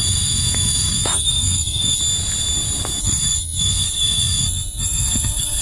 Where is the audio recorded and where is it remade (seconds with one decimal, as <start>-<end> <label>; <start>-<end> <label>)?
0.0-2.0 remade; 2.0-3.0 recorded; 3.0-5.6 remade